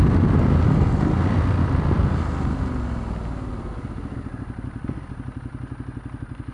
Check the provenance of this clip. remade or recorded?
recorded